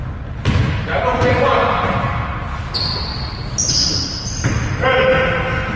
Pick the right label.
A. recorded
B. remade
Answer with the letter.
A